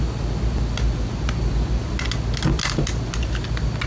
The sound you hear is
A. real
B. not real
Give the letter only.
A